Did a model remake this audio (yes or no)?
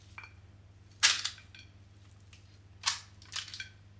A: no